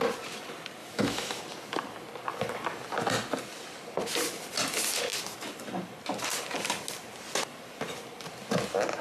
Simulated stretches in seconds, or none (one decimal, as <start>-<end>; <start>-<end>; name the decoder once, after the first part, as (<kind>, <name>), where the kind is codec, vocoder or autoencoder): 0.8-1.4 (autoencoder, DAC-VAE)